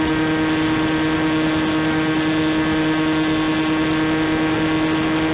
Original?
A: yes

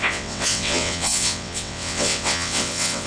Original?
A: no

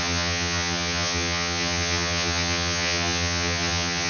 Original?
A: no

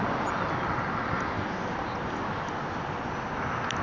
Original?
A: yes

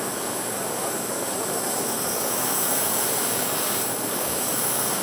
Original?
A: no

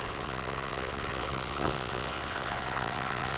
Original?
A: no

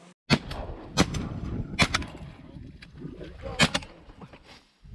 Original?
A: yes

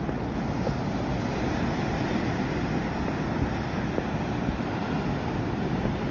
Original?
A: yes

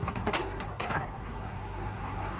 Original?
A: no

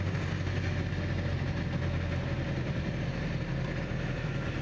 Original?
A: yes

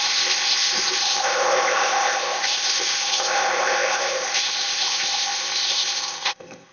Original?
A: no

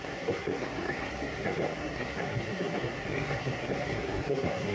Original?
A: no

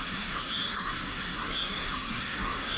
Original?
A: no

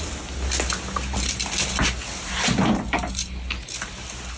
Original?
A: yes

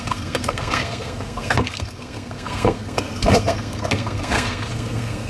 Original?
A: no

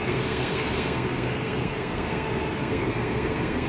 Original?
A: no